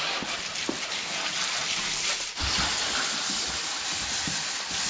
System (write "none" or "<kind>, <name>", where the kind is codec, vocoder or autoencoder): none